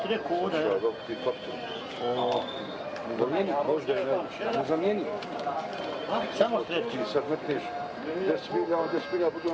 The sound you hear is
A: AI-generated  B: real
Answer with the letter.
B